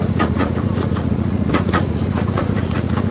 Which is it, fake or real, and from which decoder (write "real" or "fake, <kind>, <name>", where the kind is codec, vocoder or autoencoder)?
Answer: fake, vocoder, Vocos